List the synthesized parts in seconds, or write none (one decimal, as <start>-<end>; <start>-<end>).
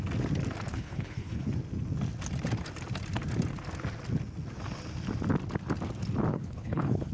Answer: 0.7-1.5; 6.3-7.1